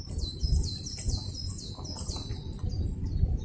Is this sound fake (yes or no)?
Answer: no